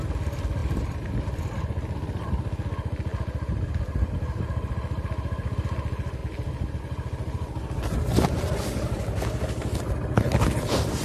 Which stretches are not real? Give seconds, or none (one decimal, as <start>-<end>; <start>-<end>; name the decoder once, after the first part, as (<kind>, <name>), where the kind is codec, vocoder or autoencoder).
0.6-2.3 (vocoder, BigVGAN v2); 3.1-3.7; 6.2-6.8